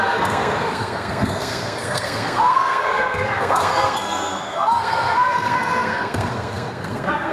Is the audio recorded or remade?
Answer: remade